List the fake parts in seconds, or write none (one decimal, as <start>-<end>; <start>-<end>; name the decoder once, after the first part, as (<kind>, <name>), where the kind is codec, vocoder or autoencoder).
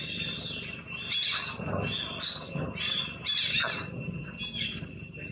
none